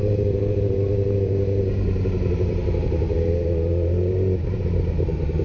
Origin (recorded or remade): remade